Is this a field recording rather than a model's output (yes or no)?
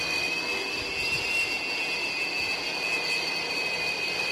yes